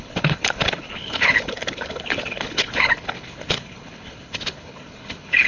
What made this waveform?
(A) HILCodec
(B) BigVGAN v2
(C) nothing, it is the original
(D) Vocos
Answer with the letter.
A